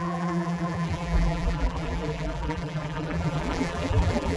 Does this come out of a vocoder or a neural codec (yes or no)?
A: yes